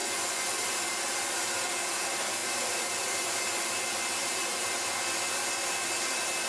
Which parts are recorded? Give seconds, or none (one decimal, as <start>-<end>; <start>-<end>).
0.5-6.5